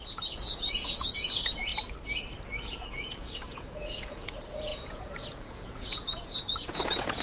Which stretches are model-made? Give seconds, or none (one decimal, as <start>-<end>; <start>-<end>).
0.0-1.7; 2.6-7.2